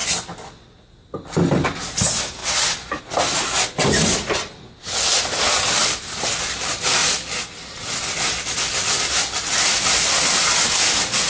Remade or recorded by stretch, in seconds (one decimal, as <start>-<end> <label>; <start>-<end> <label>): 0.0-11.3 recorded